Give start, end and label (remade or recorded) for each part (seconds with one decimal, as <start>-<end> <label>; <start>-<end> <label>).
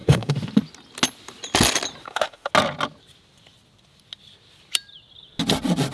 0.0-0.5 remade; 0.5-2.0 recorded; 2.0-2.5 remade; 2.5-5.9 recorded